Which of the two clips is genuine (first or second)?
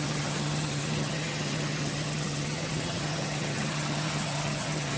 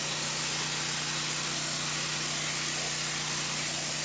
second